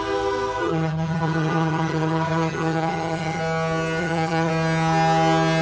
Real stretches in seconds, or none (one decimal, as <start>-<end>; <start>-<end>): 0.0-0.6; 3.4-4.0; 4.5-5.6